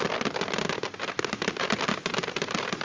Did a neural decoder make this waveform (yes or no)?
no